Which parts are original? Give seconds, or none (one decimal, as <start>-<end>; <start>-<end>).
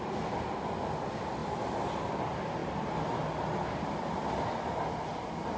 0.0-5.6